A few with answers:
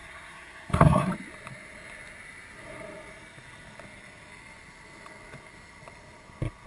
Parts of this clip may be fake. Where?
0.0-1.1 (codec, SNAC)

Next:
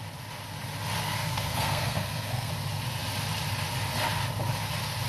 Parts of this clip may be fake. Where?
1.0-2.5 (codec, SNAC)

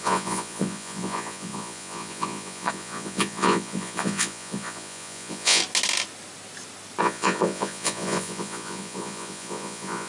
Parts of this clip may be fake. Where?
0.0-5.6 (vocoder, Vocos); 7.0-10.1

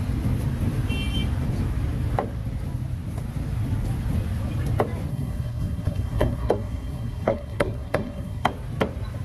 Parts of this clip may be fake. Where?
5.1-8.5 (codec, SNAC)

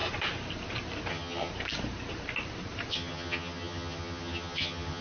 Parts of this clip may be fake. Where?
1.1-1.5 (vocoder, HiFi-GAN); 2.9-5.0

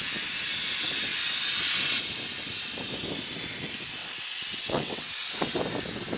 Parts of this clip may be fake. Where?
4.0-5.3 (vocoder, WaveNeXt)